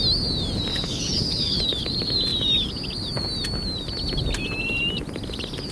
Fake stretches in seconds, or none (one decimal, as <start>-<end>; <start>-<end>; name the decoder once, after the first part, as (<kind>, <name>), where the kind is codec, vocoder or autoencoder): 0.7-1.6 (codec, HILCodec)